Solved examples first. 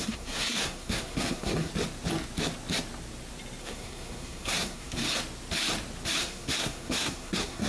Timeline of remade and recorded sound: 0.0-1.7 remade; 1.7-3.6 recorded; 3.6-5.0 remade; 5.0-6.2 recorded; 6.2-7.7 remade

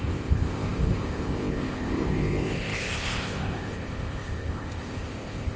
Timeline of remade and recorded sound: 0.0-5.6 remade

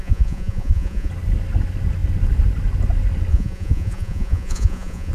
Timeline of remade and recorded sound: 0.0-1.1 remade; 1.1-3.3 recorded; 3.3-5.1 remade

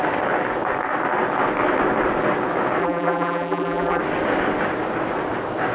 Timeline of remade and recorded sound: 0.0-2.8 recorded; 2.8-4.0 remade; 4.0-5.7 recorded

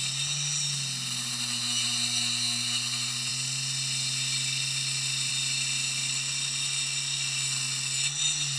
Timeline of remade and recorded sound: 0.0-8.6 recorded

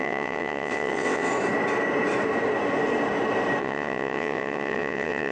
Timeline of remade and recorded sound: 0.0-1.3 remade; 1.3-3.6 recorded; 3.6-5.3 remade

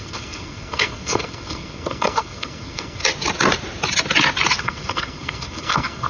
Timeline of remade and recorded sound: 0.0-3.0 remade; 3.0-4.6 recorded; 4.6-6.1 remade